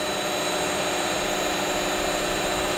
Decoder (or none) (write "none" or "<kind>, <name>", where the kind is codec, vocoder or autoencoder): vocoder, BigVGAN v2